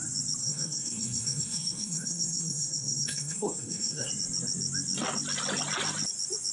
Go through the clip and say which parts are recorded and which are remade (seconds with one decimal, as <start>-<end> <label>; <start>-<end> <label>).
0.0-0.4 recorded; 0.4-4.1 remade; 4.1-6.5 recorded